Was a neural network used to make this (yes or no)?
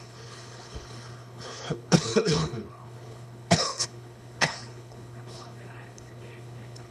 yes